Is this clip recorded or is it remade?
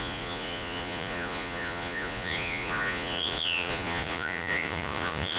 remade